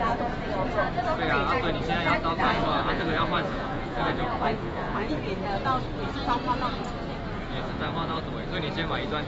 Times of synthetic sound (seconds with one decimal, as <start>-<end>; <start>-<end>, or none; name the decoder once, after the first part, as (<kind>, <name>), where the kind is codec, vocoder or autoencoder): 2.5-5.1 (vocoder, Vocos); 7.5-8.2